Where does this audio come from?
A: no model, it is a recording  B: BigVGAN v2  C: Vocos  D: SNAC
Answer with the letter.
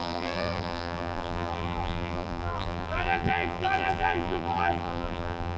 B